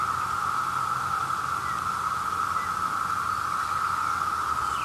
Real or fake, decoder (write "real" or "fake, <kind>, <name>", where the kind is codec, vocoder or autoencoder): real